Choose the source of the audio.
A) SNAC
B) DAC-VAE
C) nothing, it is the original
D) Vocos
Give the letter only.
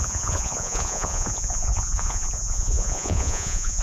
D